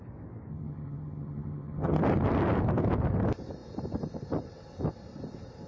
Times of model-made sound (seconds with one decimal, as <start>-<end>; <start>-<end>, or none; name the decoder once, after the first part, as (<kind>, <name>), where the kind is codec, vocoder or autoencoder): 0.5-2.0 (vocoder, HiFi-GAN)